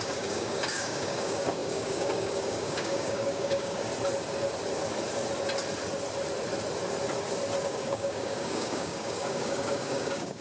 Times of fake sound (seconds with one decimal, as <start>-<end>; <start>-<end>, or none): 0.0-3.9; 7.6-10.4